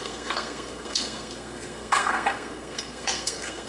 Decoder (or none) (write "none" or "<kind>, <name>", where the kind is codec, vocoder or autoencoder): codec, SNAC